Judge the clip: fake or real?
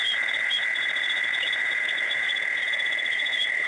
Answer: fake